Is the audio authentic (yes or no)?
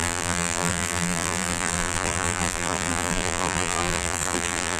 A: no